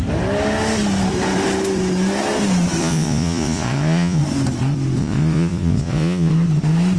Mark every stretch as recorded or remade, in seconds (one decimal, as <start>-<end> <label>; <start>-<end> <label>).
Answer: 0.0-2.8 recorded; 2.8-4.2 remade; 4.2-5.0 recorded; 5.0-6.3 remade; 6.3-7.0 recorded